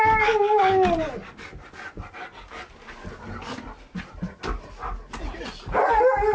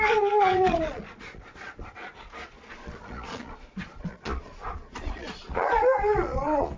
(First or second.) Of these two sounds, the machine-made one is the second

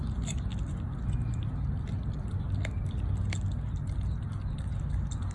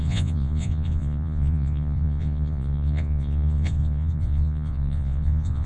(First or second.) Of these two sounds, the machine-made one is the second